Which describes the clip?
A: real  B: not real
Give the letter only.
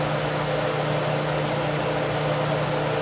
A